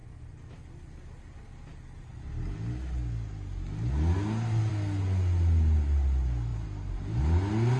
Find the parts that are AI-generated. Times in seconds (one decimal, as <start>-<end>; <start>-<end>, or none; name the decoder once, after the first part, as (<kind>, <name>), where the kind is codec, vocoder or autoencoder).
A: none